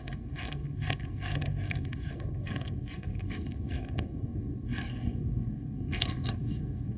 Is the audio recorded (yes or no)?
no